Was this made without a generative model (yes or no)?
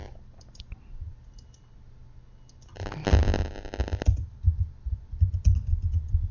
yes